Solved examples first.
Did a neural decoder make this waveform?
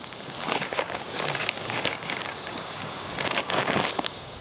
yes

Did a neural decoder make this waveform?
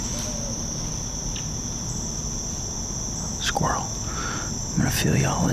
no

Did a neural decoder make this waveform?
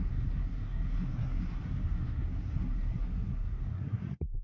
yes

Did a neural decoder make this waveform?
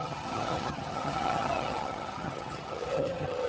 yes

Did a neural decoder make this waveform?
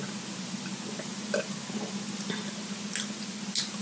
no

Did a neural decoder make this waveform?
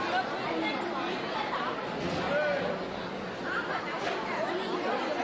no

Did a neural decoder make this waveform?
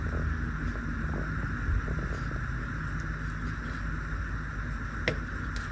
no